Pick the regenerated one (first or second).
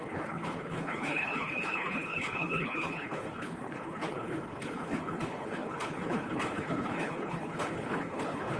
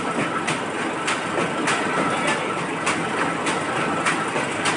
first